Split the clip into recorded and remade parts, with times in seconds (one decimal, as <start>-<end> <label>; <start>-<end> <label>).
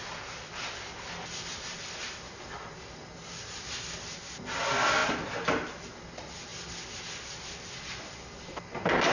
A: 0.0-9.1 recorded